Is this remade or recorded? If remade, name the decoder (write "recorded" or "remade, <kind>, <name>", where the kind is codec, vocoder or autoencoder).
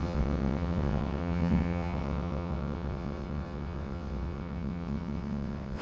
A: remade, vocoder, WaveNeXt